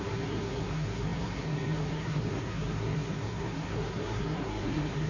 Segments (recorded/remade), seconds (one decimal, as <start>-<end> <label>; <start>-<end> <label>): 0.0-5.1 remade